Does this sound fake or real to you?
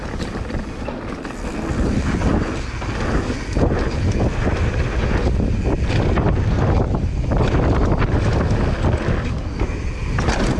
real